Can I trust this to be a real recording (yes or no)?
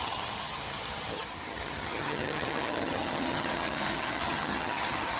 no